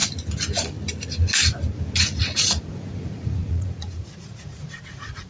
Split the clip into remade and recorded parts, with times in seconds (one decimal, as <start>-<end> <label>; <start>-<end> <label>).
0.0-2.2 recorded; 2.2-5.3 remade